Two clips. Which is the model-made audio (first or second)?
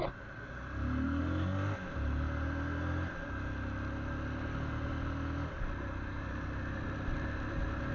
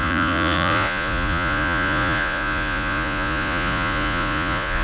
second